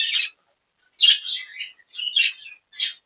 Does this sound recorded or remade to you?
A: recorded